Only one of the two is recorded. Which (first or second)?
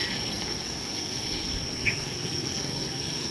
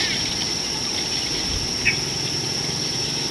second